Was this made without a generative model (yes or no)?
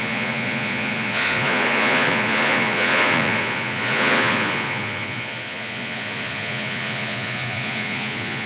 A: no